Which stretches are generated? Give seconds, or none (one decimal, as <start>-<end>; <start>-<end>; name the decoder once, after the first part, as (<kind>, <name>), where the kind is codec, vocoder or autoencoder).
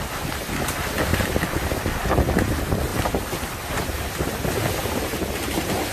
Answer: none